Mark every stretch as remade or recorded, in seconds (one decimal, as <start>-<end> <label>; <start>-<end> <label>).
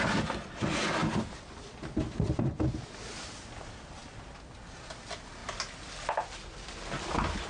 0.0-7.5 recorded